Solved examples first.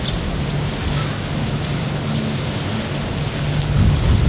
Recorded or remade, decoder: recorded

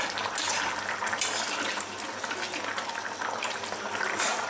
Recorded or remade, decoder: recorded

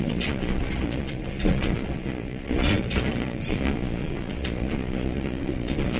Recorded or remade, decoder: remade, vocoder, Vocos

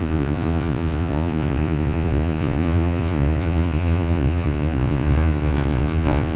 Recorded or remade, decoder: remade, vocoder, Vocos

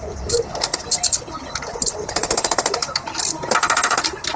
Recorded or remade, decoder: recorded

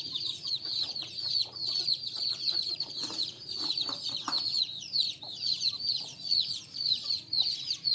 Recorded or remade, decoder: remade, vocoder, Vocos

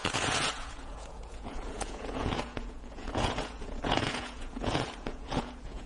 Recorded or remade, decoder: remade, vocoder, Vocos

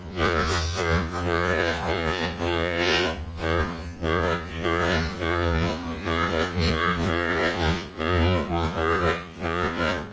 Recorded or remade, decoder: remade, vocoder, Vocos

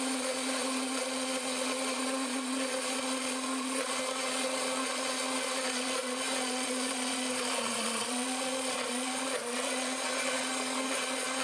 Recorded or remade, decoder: remade, vocoder, Vocos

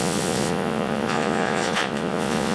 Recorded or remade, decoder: remade, vocoder, Vocos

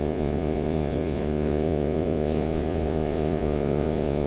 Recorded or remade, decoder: remade, vocoder, Vocos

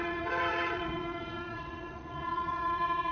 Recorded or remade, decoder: remade, vocoder, Vocos